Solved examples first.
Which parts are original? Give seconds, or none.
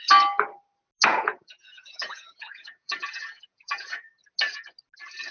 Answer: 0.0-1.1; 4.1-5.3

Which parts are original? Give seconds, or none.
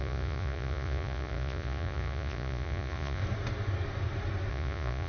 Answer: 3.2-4.5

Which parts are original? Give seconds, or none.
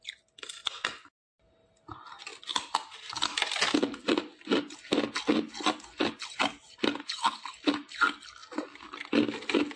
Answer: 0.0-9.8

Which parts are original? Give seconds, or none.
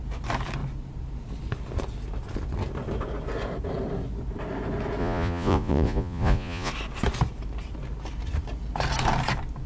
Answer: 0.0-5.0; 6.7-9.7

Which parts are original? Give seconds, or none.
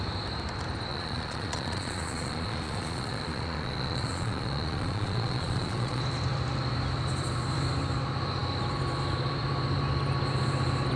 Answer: 0.0-0.9; 6.0-11.0